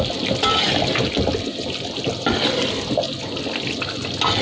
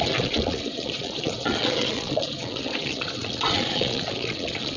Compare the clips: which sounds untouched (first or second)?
first